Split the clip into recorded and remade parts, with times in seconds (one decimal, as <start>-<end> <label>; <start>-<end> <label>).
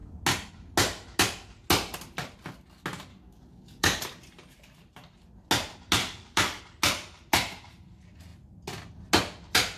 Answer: 0.0-3.1 recorded; 3.1-4.0 remade; 4.0-6.0 recorded; 6.0-6.6 remade; 6.6-9.8 recorded